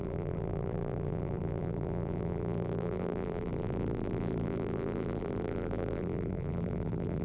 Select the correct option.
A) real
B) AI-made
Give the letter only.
B